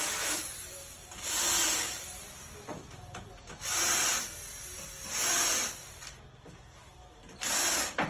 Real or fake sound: real